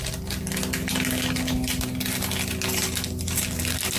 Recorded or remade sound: recorded